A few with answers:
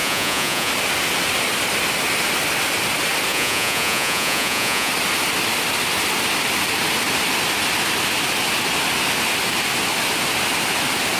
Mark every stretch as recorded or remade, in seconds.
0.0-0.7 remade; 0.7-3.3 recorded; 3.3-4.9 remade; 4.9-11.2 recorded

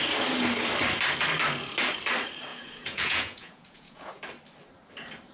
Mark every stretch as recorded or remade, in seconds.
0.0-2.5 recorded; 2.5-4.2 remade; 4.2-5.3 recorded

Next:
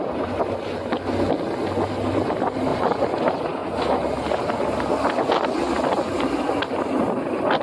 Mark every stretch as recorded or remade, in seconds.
0.0-2.7 recorded; 2.7-3.2 remade; 3.2-7.6 recorded

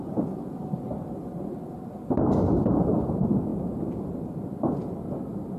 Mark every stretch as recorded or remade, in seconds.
0.0-5.6 recorded

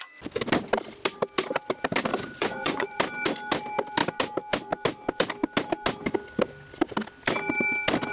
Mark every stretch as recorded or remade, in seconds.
0.0-2.1 recorded; 2.1-3.0 remade; 3.0-8.1 recorded

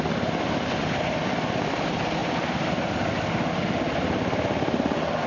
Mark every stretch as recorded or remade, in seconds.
0.0-5.3 recorded

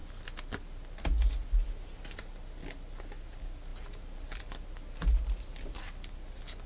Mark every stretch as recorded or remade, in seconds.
0.0-6.7 recorded

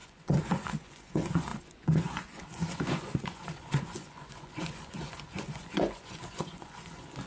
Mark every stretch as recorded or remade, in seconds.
0.0-7.3 remade